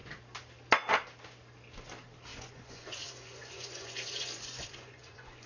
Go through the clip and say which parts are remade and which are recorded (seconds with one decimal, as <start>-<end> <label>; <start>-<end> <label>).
0.0-2.3 recorded; 2.3-5.5 remade